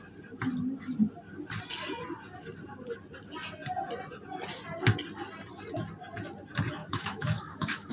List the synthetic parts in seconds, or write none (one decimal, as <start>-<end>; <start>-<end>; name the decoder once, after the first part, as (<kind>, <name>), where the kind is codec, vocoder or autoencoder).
6.8-7.9 (autoencoder, DAC-VAE)